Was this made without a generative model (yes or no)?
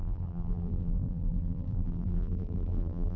no